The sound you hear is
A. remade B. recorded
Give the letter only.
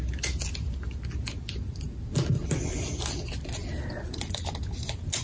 B